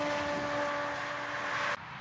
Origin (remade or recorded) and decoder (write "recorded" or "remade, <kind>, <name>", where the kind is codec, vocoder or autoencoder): recorded